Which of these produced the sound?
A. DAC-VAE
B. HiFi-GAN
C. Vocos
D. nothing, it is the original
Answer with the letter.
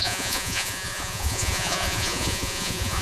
C